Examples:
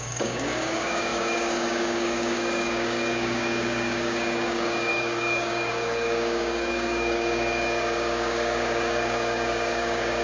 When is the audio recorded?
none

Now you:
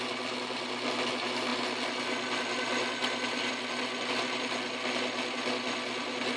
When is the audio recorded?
0.0-6.4